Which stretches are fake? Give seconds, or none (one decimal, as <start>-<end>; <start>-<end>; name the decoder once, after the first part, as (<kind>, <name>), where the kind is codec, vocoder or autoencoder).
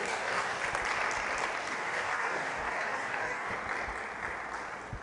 0.0-0.6 (codec, DAC); 1.6-3.5